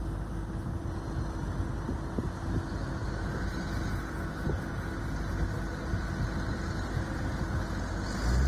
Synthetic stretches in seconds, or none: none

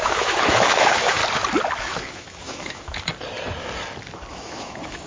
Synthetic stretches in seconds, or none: 0.0-1.2 (autoencoder, DAC-VAE); 1.8-3.1; 4.3-5.1

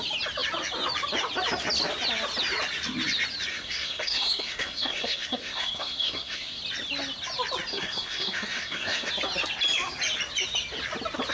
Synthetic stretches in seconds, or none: 3.5-6.6 (codec, SNAC); 7.7-9.1

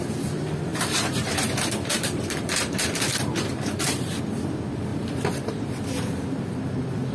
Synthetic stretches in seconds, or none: 0.7-4.2 (vocoder, BigVGAN v2); 4.9-5.8

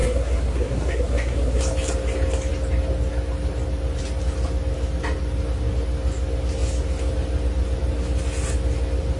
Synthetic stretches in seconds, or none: 0.0-1.6 (codec, SNAC)

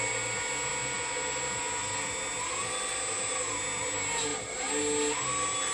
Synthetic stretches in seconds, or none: none

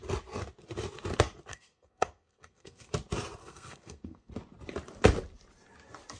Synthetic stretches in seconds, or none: 1.5-2.9 (codec, SNAC); 3.4-4.3

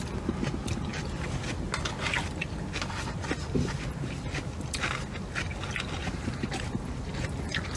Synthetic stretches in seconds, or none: 6.0-6.7 (vocoder, BigVGAN v2)